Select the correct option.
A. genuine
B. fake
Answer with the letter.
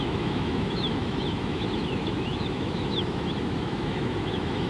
B